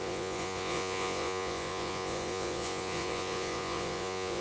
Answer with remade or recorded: remade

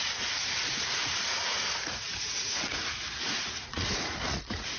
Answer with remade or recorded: remade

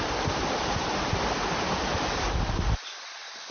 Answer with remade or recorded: recorded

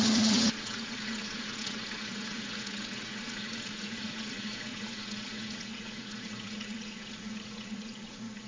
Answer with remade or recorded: remade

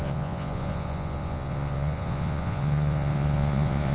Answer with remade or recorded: remade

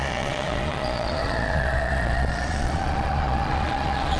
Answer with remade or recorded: remade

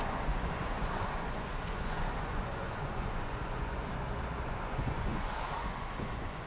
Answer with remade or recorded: remade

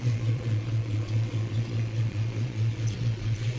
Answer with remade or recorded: remade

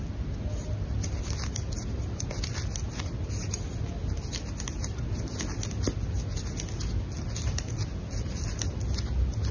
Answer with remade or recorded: recorded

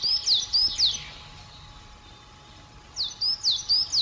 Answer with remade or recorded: recorded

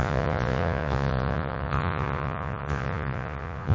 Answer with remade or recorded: remade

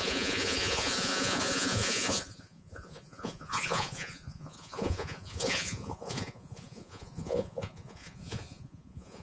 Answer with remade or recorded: remade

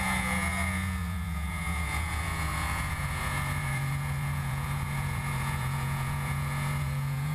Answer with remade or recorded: remade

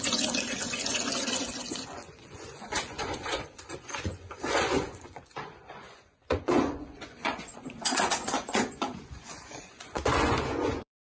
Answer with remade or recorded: remade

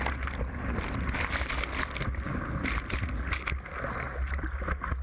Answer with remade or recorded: recorded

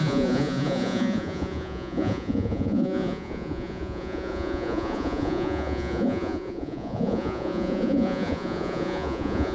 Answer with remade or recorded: remade